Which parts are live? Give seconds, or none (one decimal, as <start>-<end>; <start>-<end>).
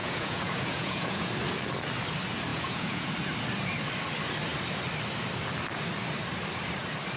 1.3-2.5; 3.1-7.2